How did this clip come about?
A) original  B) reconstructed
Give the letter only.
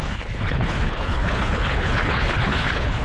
B